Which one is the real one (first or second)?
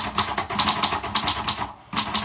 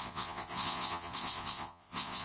first